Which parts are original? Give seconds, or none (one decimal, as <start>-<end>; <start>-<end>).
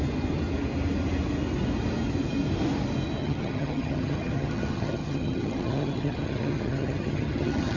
0.0-3.2